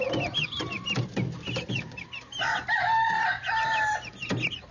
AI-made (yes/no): yes